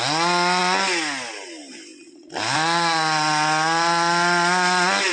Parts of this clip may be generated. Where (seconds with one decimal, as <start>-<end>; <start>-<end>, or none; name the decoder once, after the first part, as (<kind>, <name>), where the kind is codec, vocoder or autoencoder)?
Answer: none